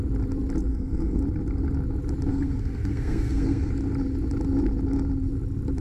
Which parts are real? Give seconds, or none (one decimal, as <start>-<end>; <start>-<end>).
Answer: 0.0-0.7; 1.2-2.3; 3.7-5.8